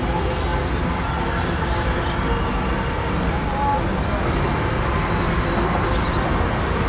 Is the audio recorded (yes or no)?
yes